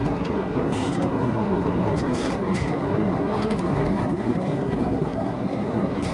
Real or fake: fake